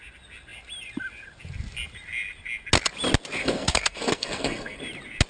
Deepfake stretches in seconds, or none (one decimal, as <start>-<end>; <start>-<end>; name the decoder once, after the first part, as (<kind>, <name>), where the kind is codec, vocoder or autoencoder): 3.4-4.8 (codec, SNAC)